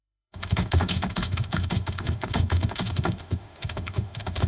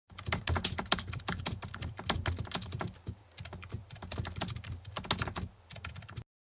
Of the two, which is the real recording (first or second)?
second